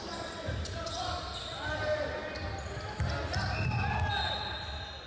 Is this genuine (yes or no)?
yes